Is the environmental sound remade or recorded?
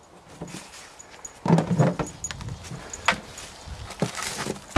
recorded